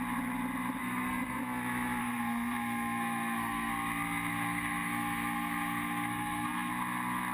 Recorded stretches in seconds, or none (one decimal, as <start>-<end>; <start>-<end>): 0.0-0.8; 1.4-2.0; 3.7-4.3; 6.7-7.3